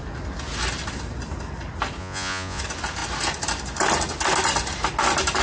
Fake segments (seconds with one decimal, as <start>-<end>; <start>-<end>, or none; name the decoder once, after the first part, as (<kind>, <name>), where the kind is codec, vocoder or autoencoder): 2.0-2.6 (vocoder, Vocos)